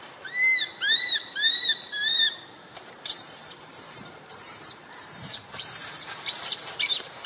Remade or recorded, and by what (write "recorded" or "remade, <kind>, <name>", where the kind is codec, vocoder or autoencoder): remade, vocoder, BigVGAN v2